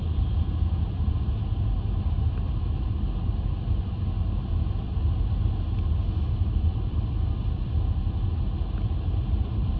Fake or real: real